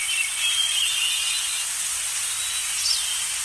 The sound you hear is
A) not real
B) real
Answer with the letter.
B